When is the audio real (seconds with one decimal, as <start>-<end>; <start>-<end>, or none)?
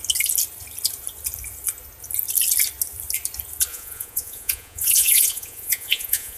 0.0-3.7